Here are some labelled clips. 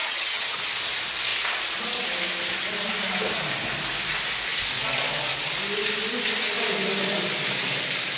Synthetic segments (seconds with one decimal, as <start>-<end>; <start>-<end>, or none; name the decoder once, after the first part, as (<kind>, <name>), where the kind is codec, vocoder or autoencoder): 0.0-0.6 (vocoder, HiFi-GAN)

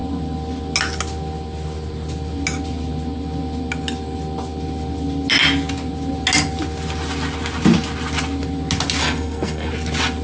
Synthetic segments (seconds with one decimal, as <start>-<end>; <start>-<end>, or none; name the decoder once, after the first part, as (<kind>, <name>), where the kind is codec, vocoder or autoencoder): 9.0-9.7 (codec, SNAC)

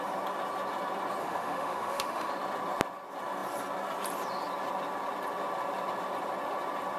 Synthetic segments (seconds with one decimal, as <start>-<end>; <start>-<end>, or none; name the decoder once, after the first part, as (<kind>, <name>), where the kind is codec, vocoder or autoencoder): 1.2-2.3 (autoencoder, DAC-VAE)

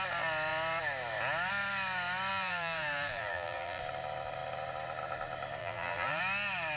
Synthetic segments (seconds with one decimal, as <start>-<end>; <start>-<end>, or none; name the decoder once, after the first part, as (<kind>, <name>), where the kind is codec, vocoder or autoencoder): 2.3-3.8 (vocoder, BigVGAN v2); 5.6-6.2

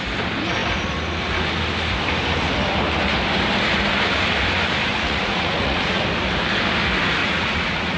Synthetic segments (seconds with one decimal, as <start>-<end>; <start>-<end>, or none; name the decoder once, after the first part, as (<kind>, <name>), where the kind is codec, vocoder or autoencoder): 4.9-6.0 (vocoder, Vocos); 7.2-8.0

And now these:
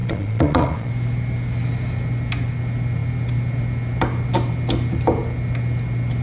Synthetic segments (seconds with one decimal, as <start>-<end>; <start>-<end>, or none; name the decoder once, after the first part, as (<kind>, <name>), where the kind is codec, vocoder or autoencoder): 0.0-0.9 (vocoder, Vocos)

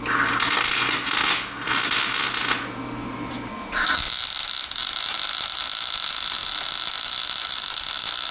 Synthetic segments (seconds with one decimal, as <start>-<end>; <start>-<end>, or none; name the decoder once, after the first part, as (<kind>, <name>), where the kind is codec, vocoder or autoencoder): none